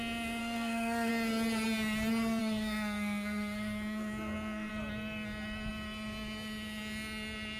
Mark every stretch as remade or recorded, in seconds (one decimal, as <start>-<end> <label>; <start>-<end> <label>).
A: 0.0-0.4 recorded; 0.4-1.1 remade; 1.1-2.4 recorded; 2.4-4.7 remade; 4.7-7.6 recorded